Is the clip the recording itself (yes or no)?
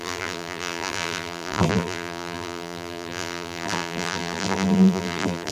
no